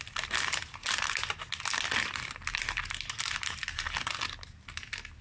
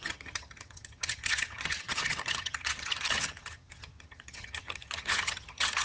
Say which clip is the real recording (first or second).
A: first